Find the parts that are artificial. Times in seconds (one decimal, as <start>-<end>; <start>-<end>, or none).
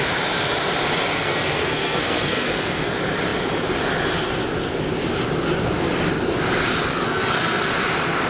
1.2-2.9; 6.9-7.7